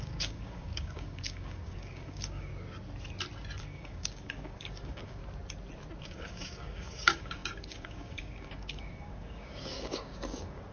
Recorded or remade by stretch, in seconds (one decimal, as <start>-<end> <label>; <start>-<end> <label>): 0.0-2.5 remade; 2.5-3.6 recorded; 3.6-5.2 remade; 5.2-6.0 recorded; 6.0-10.7 remade